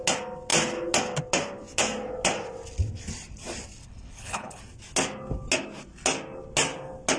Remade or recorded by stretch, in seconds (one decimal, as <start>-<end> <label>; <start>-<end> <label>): 0.0-3.8 recorded; 3.8-4.6 remade; 4.6-7.2 recorded